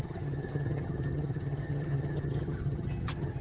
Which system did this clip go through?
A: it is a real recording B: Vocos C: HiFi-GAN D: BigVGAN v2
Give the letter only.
C